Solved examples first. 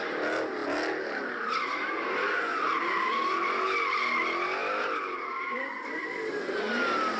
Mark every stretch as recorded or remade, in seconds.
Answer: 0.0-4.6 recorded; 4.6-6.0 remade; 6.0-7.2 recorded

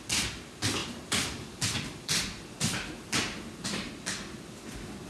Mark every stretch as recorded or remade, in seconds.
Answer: 0.0-0.8 recorded; 0.8-3.9 remade; 3.9-5.1 recorded

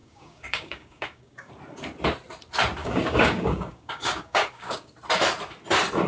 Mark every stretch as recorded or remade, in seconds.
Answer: 0.0-1.5 remade; 1.5-2.8 recorded; 2.8-4.9 remade; 4.9-6.1 recorded